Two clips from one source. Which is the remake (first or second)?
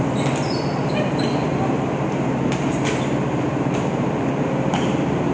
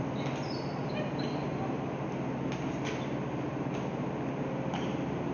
first